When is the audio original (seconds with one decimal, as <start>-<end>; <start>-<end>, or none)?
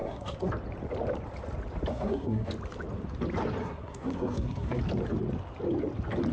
0.5-1.9; 2.5-3.6; 4.8-6.3